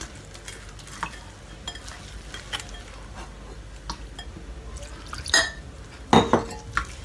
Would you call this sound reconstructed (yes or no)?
no